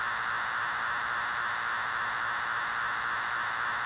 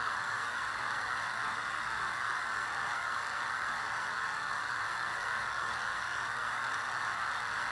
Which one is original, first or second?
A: first